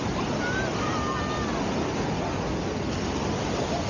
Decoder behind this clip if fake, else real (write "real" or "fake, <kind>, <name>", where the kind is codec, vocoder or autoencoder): real